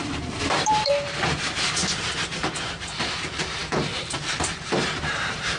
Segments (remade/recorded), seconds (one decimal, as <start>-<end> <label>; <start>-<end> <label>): 0.0-1.8 remade; 1.8-2.5 recorded; 2.5-5.6 remade